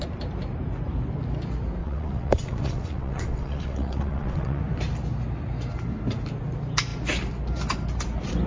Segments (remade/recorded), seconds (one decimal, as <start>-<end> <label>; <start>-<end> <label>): 0.0-1.8 recorded; 1.8-4.6 remade; 4.6-8.5 recorded